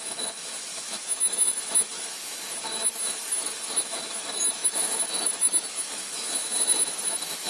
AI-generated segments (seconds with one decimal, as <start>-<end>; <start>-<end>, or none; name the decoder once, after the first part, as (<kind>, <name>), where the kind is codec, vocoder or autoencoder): 0.0-7.5 (autoencoder, DAC-VAE)